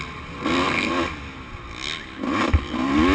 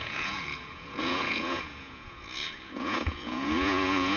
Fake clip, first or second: second